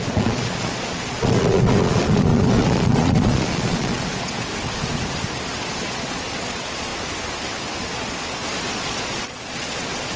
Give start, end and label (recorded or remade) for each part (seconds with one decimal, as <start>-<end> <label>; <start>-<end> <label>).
0.0-4.5 remade; 4.5-5.8 recorded; 5.8-6.9 remade; 6.9-7.8 recorded; 7.8-10.2 remade